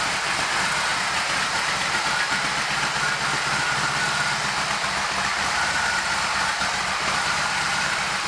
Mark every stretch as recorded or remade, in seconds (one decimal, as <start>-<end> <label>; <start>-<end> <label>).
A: 0.0-8.3 recorded